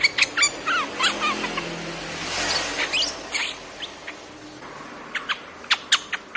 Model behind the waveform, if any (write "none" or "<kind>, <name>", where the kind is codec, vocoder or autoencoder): none